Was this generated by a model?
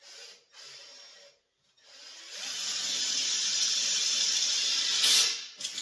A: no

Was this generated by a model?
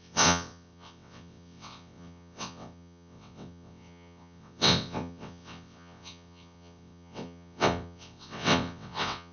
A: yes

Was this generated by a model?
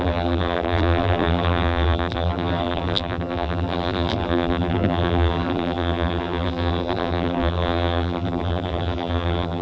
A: yes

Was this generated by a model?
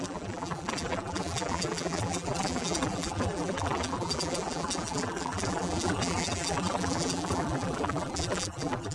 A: yes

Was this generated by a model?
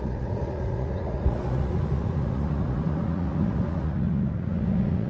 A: yes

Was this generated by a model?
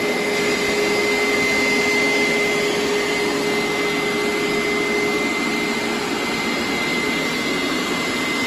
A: no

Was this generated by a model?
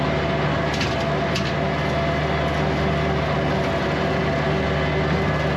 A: no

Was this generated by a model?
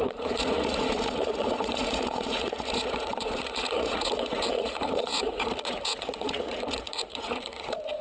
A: yes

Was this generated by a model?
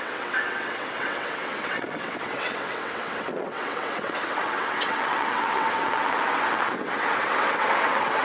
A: yes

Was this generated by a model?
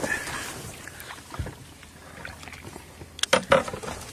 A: no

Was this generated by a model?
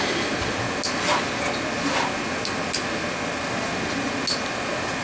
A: no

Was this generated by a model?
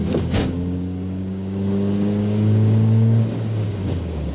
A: yes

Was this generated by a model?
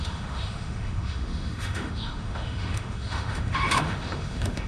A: yes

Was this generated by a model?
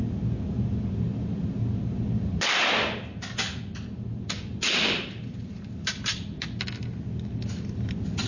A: no